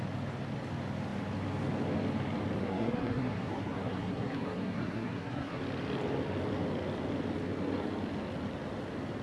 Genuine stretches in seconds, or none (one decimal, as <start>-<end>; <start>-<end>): 0.0-2.6; 5.6-9.2